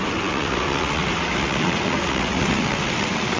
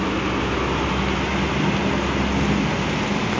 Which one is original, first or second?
second